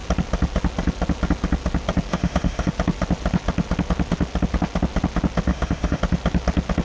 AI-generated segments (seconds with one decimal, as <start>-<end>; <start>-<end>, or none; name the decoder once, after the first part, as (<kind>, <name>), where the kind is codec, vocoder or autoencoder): 2.1-2.7 (autoencoder, DAC-VAE); 5.5-6.0